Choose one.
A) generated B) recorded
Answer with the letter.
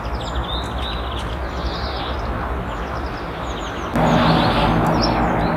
B